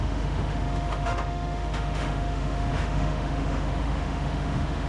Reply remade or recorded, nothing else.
remade